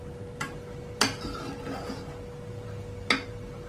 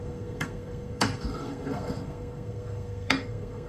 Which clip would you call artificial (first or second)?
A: second